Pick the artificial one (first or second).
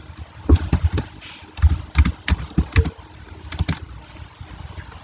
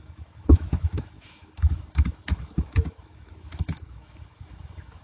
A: second